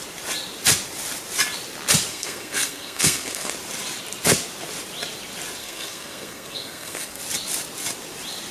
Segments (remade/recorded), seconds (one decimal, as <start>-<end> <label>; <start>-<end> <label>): 0.0-2.1 recorded; 2.1-3.5 remade; 3.5-5.6 recorded; 5.6-7.2 remade; 7.2-8.5 recorded